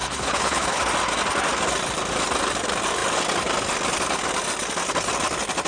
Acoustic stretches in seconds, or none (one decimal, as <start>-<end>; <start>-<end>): 0.8-5.7